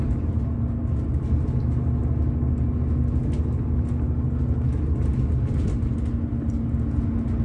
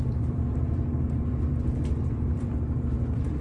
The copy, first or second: second